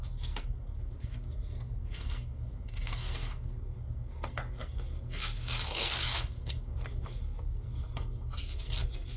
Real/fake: fake